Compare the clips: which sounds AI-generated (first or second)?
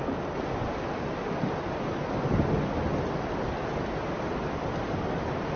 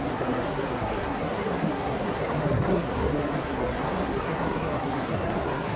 second